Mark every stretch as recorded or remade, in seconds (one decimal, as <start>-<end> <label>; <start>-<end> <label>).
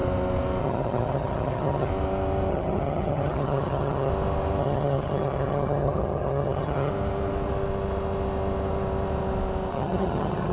0.0-0.6 recorded; 0.6-1.9 remade; 1.9-2.5 recorded; 2.5-4.1 remade; 4.1-4.6 recorded; 4.6-6.9 remade; 6.9-9.7 recorded; 9.7-10.5 remade